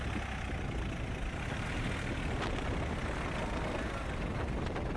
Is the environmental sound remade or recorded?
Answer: recorded